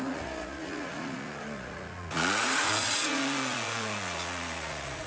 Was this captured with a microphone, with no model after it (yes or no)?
no